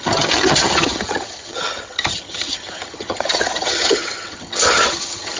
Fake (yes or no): yes